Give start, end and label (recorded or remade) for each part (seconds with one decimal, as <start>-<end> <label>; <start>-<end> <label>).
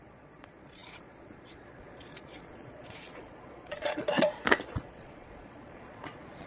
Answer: 0.0-6.5 remade